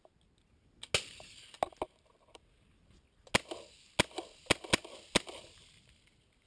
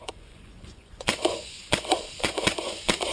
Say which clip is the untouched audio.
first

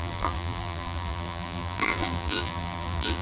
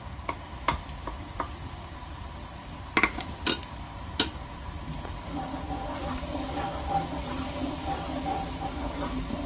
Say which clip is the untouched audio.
second